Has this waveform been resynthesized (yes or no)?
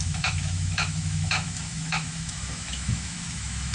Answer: yes